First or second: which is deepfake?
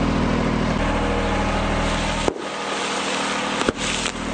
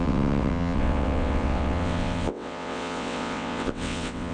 second